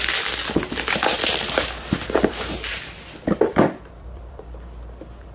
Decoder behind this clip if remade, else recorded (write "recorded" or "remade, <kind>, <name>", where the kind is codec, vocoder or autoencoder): remade, vocoder, BigVGAN v2